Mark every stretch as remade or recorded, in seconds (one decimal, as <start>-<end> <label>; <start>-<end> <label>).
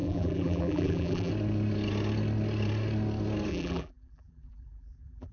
0.0-1.3 remade; 1.3-3.5 recorded; 3.5-5.3 remade